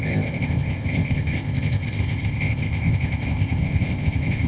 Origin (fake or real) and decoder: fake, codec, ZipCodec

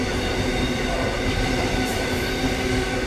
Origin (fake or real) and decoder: real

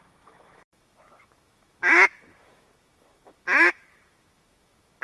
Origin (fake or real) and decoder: fake, autoencoder, DAC-VAE